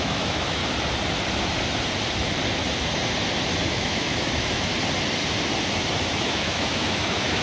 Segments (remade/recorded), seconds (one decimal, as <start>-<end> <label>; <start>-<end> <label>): 0.0-0.6 remade; 0.6-3.7 recorded; 3.7-4.7 remade; 4.7-6.0 recorded; 6.0-7.4 remade